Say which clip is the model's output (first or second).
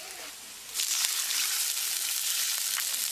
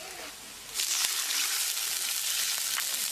first